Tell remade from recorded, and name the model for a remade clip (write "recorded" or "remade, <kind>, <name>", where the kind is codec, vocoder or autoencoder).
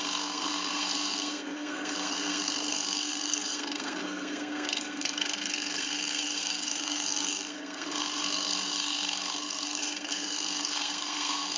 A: remade, codec, SNAC